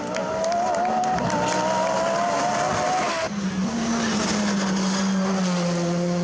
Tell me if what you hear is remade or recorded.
recorded